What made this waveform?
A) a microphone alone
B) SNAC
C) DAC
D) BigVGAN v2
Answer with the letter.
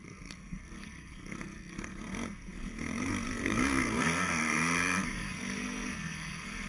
B